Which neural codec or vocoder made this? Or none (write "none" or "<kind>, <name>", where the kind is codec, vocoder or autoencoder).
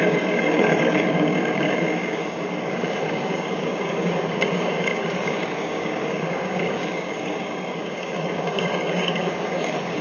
codec, DAC